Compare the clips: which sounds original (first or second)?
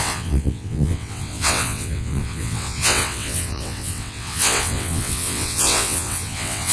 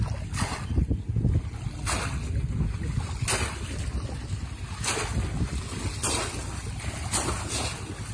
second